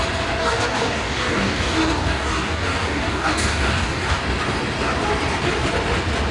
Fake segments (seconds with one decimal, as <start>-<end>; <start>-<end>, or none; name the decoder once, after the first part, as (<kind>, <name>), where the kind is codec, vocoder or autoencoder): 0.4-4.2 (codec, DAC)